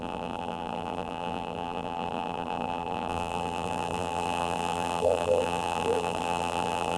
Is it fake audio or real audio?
fake